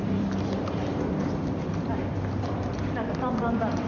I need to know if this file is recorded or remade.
remade